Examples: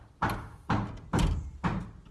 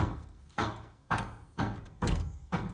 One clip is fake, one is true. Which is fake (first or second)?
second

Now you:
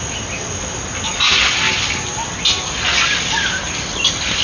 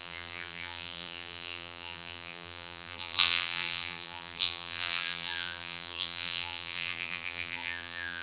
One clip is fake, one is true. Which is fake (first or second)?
second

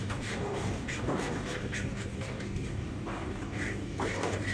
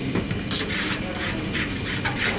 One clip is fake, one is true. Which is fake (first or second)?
first